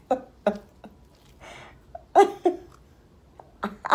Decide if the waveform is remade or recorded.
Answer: recorded